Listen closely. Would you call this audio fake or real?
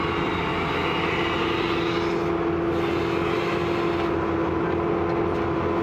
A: real